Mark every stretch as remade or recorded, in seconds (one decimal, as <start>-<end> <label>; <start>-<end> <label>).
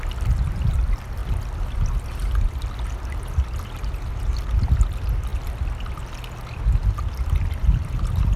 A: 0.0-8.4 recorded